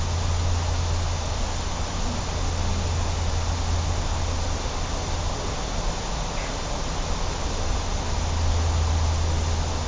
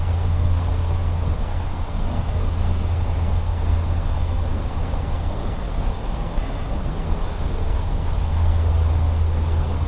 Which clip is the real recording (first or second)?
first